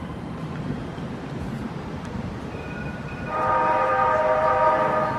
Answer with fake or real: fake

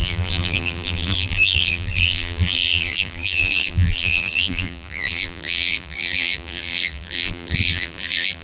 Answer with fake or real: fake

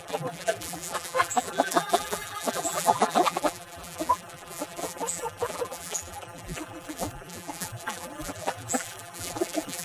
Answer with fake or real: fake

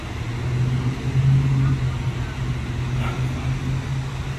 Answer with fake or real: real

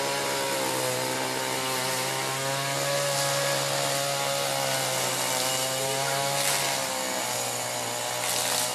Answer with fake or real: real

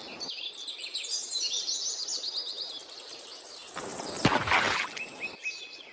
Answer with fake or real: real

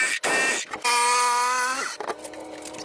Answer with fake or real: real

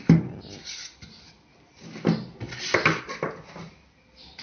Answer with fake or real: real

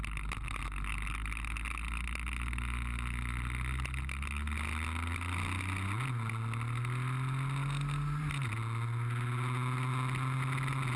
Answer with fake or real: real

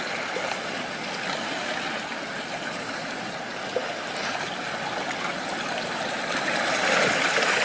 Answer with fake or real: real